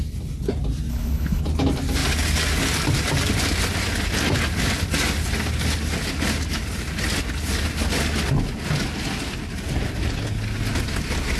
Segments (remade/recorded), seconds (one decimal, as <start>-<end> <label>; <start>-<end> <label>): 0.0-0.9 recorded; 0.9-1.4 remade; 1.4-11.4 recorded